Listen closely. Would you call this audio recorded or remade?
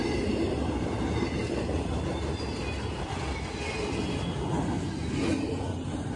recorded